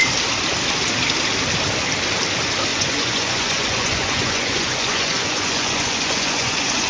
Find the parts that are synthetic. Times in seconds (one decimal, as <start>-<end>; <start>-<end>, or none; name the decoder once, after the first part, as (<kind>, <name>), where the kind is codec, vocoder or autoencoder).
2.7-6.9 (vocoder, Vocos)